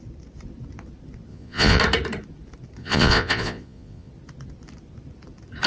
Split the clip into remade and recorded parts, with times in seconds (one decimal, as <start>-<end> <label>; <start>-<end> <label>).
0.0-1.3 recorded; 1.3-1.8 remade; 1.8-2.8 recorded; 2.8-4.1 remade; 4.1-5.7 recorded

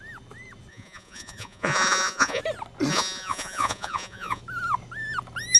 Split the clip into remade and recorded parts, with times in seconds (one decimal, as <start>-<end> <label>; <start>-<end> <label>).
0.0-0.7 recorded; 0.7-2.4 remade; 2.4-2.9 recorded; 2.9-4.4 remade; 4.4-5.6 recorded

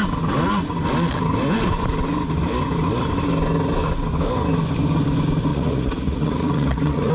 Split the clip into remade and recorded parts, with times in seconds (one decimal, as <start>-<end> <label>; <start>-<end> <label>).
0.0-5.5 recorded; 5.5-7.1 remade

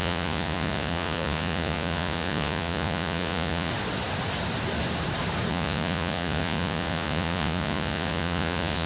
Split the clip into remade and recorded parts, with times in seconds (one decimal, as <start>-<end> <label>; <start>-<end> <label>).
0.0-3.7 remade; 3.7-5.5 recorded; 5.5-8.9 remade

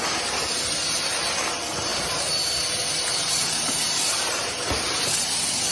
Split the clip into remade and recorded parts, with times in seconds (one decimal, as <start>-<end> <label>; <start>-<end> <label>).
0.0-5.7 recorded